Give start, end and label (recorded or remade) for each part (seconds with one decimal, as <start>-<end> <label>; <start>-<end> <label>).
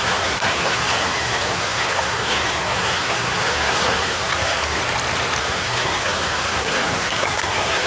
0.0-4.8 remade; 4.8-5.4 recorded; 5.4-7.9 remade